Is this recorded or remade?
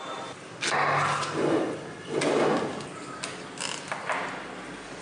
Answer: recorded